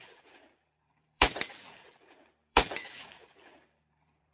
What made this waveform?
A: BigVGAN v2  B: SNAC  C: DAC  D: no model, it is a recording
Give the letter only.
A